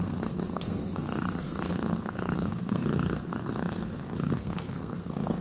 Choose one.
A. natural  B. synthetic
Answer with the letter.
B